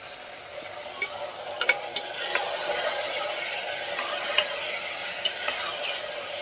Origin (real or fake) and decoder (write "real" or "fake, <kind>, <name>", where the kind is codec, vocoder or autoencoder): real